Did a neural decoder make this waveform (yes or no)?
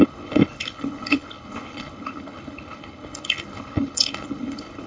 yes